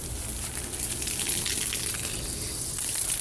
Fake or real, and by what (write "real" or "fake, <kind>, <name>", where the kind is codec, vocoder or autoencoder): real